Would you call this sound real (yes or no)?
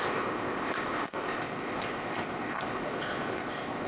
no